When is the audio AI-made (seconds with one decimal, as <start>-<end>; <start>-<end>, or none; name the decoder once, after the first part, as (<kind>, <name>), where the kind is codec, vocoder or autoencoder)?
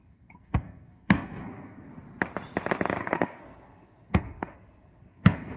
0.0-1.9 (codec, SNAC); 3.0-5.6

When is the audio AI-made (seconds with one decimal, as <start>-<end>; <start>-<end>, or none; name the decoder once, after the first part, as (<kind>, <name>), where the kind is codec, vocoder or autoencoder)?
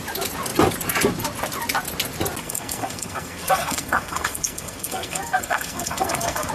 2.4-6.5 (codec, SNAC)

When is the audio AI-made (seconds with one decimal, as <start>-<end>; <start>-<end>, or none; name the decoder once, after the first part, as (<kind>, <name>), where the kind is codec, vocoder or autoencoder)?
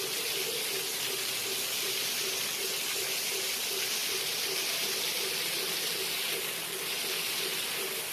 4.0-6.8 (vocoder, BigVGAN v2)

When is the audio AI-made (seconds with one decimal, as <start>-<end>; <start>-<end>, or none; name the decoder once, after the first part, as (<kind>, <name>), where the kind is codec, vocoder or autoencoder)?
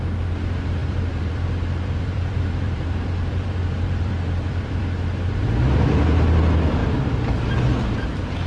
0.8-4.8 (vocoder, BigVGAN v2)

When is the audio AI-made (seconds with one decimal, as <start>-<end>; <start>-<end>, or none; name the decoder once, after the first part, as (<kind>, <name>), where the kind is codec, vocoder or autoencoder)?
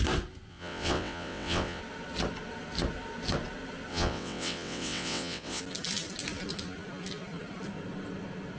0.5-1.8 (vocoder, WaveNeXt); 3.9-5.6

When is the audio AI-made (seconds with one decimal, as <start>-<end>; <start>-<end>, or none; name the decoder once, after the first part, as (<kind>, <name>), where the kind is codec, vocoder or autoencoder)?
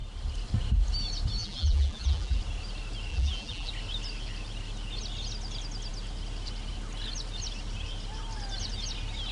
1.4-2.4 (vocoder, BigVGAN v2); 3.1-3.7